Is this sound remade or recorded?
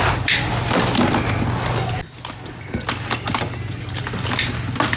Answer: recorded